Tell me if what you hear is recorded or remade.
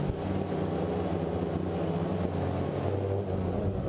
recorded